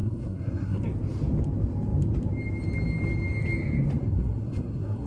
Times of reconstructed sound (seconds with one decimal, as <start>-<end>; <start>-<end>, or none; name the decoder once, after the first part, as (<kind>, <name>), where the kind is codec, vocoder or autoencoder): 0.0-0.8 (codec, SNAC); 4.0-5.1